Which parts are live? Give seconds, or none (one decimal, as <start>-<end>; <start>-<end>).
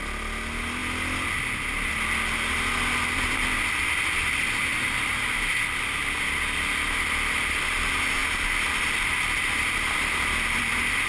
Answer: 0.0-11.1